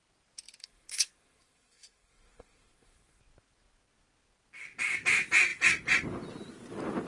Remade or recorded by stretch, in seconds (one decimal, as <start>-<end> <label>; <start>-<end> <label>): 0.0-0.6 recorded; 0.6-3.2 remade; 3.2-7.1 recorded